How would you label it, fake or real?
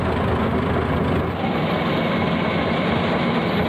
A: real